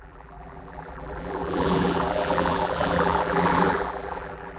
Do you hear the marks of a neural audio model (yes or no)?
yes